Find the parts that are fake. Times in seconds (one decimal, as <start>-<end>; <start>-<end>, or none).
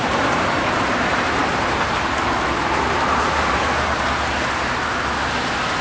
0.0-3.9